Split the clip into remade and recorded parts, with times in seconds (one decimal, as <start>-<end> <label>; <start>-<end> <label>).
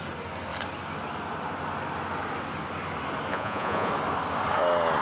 0.0-3.3 recorded; 3.3-3.9 remade; 3.9-5.0 recorded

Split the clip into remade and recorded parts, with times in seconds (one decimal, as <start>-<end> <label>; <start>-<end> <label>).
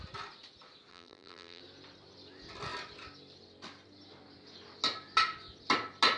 0.0-0.9 recorded; 0.9-1.6 remade; 1.6-6.2 recorded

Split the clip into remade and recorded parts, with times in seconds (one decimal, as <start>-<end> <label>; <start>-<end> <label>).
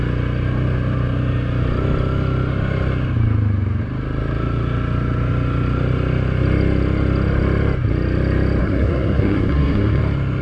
0.0-8.6 recorded; 8.6-10.0 remade; 10.0-10.4 recorded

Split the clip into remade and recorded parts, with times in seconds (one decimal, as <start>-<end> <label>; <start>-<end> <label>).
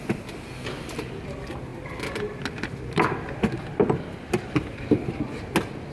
0.0-5.9 recorded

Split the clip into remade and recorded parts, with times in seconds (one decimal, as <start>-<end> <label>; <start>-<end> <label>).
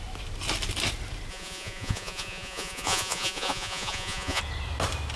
0.0-1.3 recorded; 1.3-4.4 remade; 4.4-5.2 recorded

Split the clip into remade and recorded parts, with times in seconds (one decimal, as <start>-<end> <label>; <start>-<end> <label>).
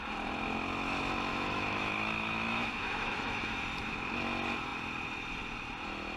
0.0-1.3 recorded; 1.3-3.6 remade; 3.6-6.2 recorded